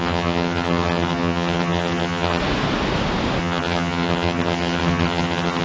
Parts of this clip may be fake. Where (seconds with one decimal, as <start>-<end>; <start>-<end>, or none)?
0.0-2.4; 3.4-5.6